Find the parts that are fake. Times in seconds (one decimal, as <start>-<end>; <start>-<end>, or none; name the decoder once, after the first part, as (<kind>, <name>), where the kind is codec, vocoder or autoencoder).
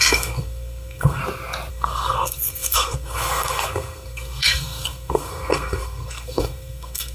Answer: 0.0-1.2 (codec, SNAC); 1.7-7.1